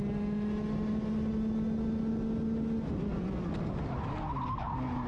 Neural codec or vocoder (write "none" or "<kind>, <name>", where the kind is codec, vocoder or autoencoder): none